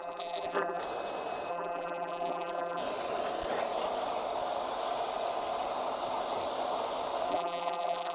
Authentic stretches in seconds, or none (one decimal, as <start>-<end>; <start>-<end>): 0.8-1.5; 2.8-7.3